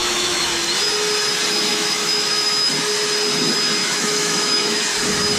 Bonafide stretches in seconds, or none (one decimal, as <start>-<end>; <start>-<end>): 0.5-1.7; 2.7-3.8; 4.8-5.4